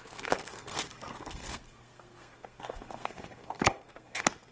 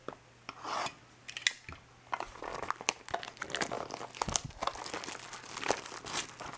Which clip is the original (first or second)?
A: second